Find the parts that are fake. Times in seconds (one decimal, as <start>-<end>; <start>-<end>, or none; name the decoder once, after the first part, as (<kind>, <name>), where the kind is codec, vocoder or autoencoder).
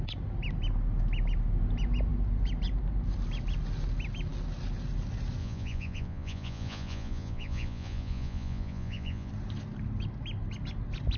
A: 5.4-9.3 (vocoder, Vocos)